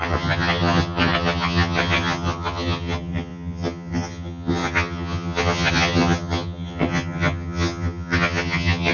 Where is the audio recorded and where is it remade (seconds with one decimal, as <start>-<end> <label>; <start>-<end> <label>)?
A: 0.0-8.9 remade